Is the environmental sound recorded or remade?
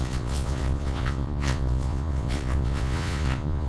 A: remade